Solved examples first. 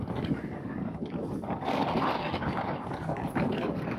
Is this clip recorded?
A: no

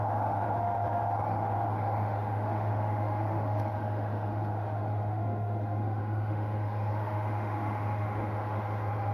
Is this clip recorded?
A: no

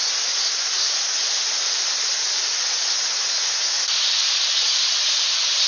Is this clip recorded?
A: yes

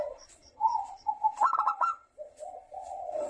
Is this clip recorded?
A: no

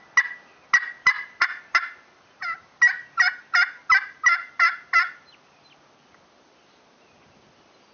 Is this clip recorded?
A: yes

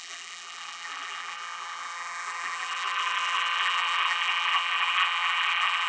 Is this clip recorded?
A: no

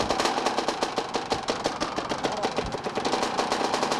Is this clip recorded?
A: yes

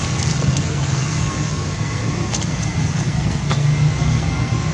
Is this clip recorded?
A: no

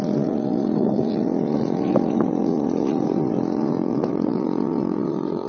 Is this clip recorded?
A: no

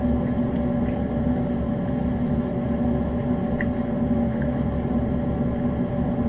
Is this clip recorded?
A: yes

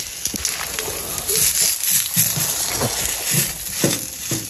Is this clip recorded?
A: yes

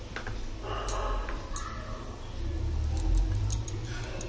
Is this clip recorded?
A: yes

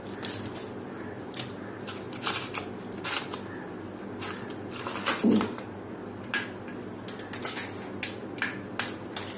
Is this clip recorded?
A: yes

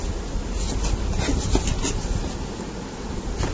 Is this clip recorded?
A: yes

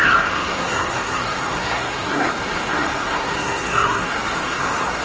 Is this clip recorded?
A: no